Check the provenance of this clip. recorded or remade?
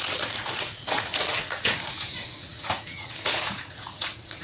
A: remade